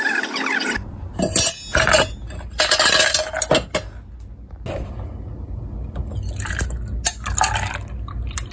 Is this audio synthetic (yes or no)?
no